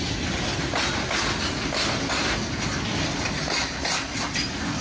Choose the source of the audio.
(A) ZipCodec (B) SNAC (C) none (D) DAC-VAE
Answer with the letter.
C